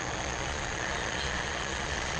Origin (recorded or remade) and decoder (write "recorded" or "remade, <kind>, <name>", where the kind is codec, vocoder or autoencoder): remade, vocoder, Vocos